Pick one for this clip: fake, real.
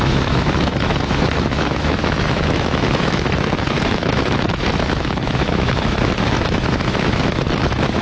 fake